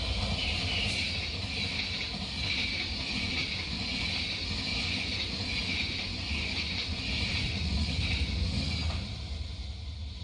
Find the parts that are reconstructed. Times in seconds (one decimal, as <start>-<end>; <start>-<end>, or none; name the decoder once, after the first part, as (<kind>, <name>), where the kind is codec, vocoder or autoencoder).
3.0-4.1 (vocoder, Vocos); 4.7-8.0